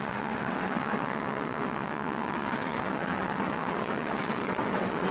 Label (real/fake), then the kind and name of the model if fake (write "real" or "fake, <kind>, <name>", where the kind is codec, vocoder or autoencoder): fake, vocoder, WaveNeXt